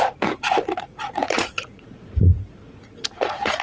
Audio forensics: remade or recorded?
remade